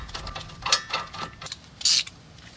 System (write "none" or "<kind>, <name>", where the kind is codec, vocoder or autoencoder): none